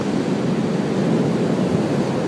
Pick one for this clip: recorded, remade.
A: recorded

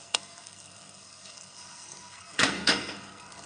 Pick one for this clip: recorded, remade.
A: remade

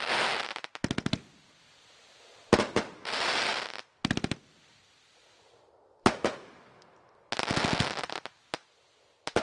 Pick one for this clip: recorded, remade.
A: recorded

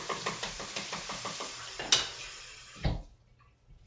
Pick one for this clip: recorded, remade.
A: recorded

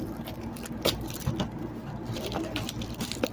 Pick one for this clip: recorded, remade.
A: remade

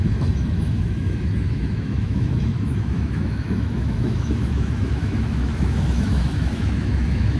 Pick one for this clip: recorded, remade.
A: remade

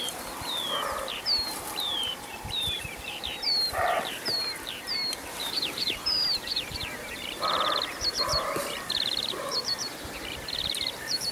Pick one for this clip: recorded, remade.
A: remade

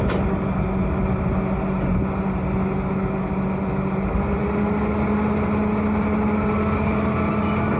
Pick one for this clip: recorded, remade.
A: recorded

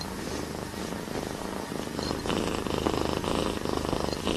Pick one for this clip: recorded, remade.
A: recorded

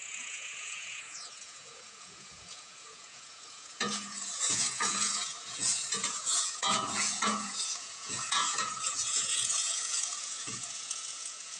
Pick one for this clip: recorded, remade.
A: remade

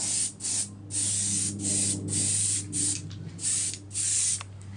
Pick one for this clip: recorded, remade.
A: recorded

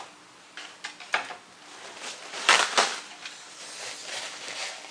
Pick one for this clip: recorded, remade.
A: recorded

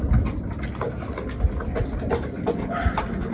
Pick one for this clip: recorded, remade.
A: recorded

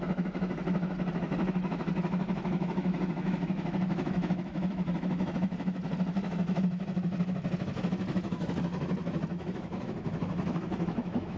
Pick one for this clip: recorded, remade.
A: remade